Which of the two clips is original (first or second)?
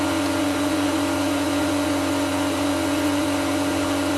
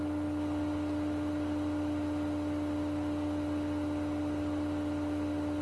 second